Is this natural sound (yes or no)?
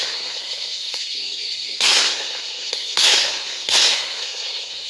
no